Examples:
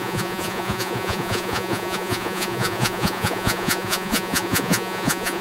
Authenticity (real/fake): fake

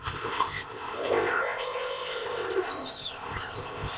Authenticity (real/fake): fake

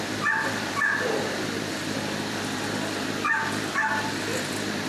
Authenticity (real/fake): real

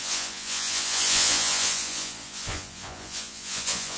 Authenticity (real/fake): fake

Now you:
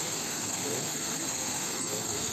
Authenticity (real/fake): fake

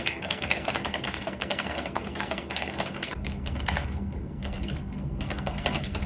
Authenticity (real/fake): fake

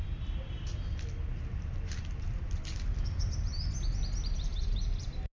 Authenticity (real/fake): real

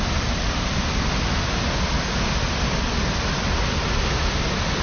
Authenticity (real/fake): real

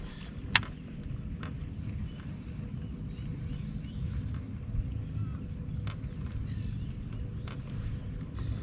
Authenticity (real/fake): real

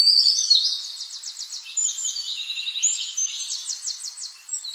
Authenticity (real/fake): real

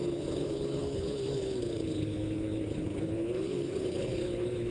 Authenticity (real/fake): fake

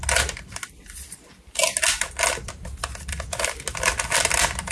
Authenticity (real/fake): real